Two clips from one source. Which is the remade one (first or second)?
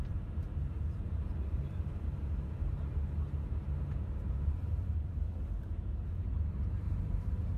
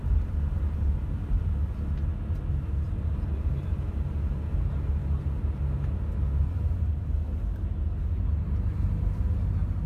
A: first